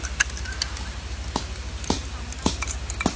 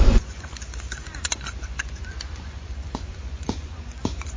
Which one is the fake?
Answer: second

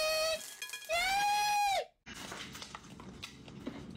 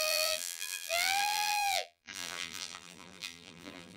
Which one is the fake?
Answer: second